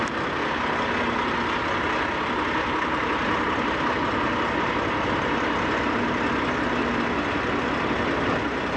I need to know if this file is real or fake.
real